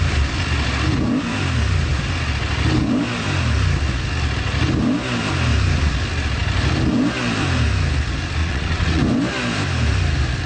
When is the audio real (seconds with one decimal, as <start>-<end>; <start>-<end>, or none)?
0.0-8.4; 9.0-10.5